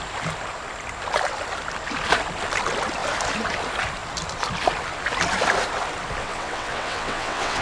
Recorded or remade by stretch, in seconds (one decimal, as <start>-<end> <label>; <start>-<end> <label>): 0.0-6.2 recorded; 6.2-7.6 remade